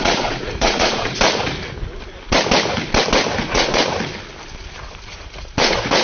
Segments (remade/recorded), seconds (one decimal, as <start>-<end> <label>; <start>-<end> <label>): 0.0-1.1 remade; 1.1-3.4 recorded; 3.4-3.8 remade; 3.8-5.0 recorded; 5.0-6.0 remade